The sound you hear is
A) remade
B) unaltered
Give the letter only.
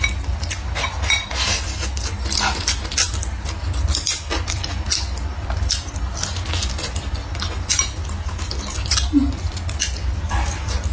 B